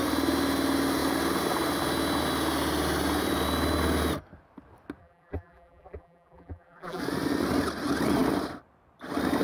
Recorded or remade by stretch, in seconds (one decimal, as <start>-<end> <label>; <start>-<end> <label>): 0.0-5.0 recorded; 5.0-7.0 remade; 7.0-9.4 recorded